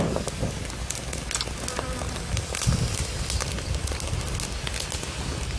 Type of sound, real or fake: real